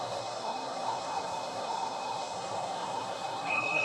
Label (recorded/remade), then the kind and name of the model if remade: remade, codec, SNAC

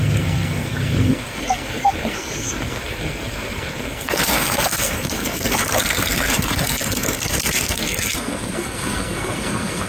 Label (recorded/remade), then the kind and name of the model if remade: remade, codec, SNAC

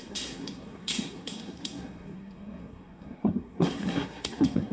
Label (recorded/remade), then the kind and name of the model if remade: remade, codec, SNAC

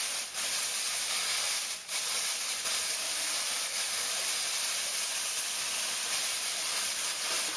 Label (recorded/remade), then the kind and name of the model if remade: recorded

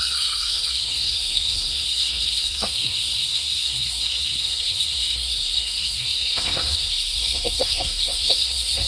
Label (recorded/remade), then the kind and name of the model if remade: remade, codec, SNAC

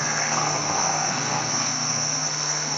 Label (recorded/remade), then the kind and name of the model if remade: remade, codec, SNAC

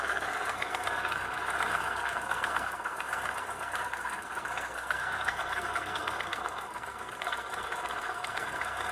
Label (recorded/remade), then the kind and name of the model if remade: remade, codec, SNAC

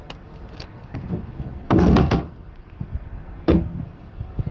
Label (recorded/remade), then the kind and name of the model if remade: remade, codec, SNAC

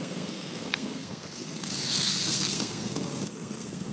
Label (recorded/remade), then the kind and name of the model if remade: remade, codec, SNAC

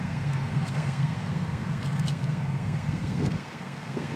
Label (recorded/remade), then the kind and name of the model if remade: remade, codec, SNAC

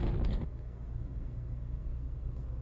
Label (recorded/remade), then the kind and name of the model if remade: remade, codec, SNAC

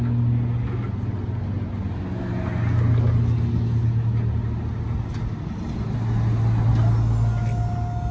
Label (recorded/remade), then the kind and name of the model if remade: recorded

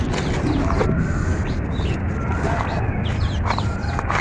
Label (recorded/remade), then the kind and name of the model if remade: recorded